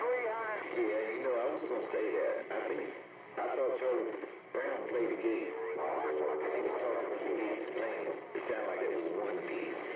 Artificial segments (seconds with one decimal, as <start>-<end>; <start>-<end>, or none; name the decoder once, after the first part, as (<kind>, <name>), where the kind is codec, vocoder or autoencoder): 3.3-5.5 (codec, DAC)